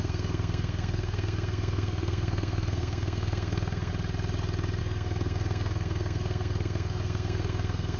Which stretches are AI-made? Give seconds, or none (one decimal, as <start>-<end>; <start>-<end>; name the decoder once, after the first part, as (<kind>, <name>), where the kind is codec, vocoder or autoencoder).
0.0-3.9 (codec, SNAC); 4.8-8.0